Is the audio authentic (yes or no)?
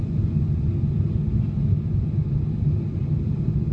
yes